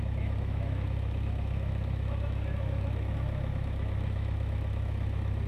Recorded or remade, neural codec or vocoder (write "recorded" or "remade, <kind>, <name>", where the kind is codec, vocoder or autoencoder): remade, autoencoder, DAC-VAE